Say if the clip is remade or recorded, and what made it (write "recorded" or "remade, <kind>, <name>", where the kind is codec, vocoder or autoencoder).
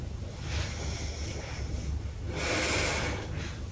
recorded